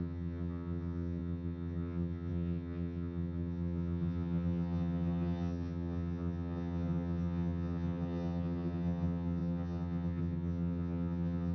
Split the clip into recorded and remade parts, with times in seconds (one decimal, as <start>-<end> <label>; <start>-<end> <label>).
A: 0.0-11.5 remade